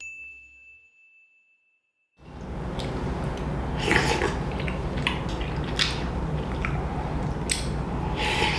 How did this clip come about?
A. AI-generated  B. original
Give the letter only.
B